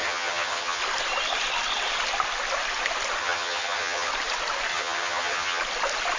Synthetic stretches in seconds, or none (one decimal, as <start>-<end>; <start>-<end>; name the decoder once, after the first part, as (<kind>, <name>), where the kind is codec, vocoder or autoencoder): 0.0-0.8 (vocoder, HiFi-GAN); 3.2-4.1; 4.7-5.6